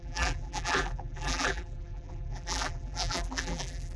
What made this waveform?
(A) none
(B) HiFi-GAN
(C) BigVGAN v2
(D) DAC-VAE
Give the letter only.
C